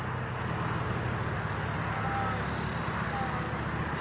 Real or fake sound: real